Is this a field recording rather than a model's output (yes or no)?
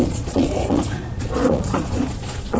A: no